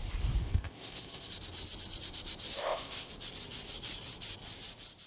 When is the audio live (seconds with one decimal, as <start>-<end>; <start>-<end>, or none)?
0.0-0.4; 1.3-2.6; 3.1-5.1